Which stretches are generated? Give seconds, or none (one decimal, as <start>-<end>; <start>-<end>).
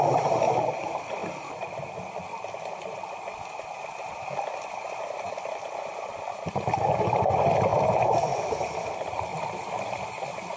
7.7-9.7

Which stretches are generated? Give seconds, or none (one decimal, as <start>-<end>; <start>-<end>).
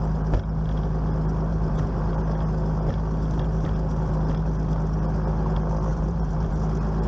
1.5-2.1; 5.9-6.5